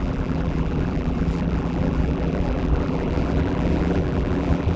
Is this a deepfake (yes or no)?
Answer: yes